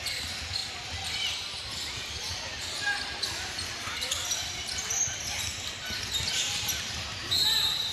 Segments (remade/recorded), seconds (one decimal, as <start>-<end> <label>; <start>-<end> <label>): 0.0-7.9 recorded